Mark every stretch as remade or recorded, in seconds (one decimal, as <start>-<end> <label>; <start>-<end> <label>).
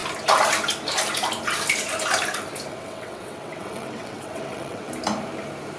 0.0-2.7 recorded; 2.7-4.9 remade; 4.9-5.8 recorded